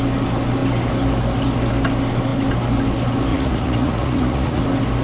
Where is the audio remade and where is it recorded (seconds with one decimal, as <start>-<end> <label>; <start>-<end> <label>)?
0.0-3.3 recorded; 3.3-4.6 remade; 4.6-5.0 recorded